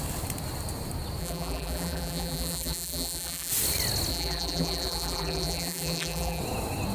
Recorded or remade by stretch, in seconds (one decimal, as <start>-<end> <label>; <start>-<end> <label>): 0.0-1.2 recorded; 1.2-3.5 remade; 3.5-4.1 recorded; 4.1-6.4 remade; 6.4-6.9 recorded